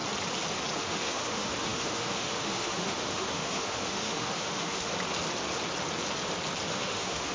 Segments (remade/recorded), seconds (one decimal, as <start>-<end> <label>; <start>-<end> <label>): 0.0-0.8 recorded; 0.8-4.9 remade; 4.9-6.7 recorded; 6.7-7.3 remade